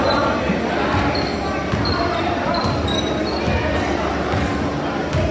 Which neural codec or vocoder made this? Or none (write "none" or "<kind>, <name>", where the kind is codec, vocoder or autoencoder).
none